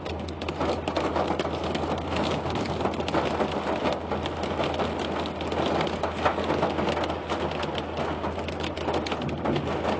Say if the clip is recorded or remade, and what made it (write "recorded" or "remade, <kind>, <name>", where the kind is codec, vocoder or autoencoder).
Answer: recorded